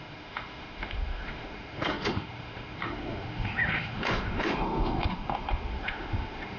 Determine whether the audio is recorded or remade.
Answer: remade